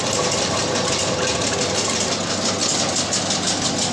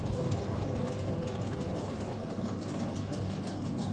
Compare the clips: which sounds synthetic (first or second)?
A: second